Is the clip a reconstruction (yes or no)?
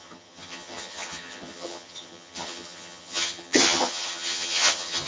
yes